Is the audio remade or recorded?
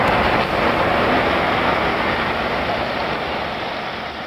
recorded